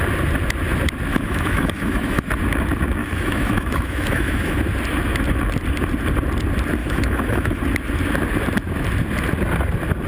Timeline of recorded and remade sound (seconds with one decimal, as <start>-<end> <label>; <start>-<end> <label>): 0.0-1.1 recorded; 1.1-2.3 remade; 2.3-3.0 recorded; 3.0-4.6 remade; 4.6-6.8 recorded; 6.8-7.6 remade; 7.6-10.1 recorded